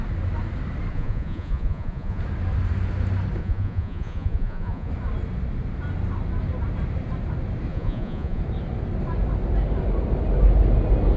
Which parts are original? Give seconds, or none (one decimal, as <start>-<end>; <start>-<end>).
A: 0.0-0.9; 2.2-3.4; 4.9-7.7; 8.4-11.2